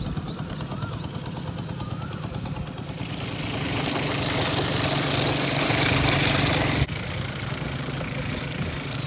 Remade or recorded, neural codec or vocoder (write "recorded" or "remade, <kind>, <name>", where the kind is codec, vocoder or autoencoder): recorded